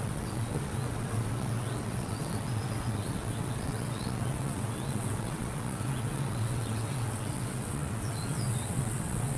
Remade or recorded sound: remade